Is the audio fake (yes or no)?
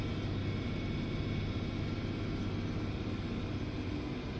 no